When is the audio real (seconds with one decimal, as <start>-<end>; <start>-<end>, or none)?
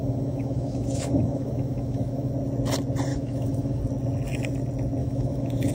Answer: 2.3-3.1; 3.8-5.0